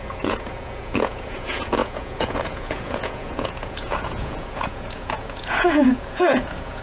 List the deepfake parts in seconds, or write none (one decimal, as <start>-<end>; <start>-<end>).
0.0-6.8